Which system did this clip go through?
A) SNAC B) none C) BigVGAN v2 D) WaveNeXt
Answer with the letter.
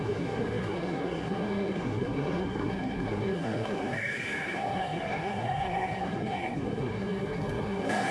A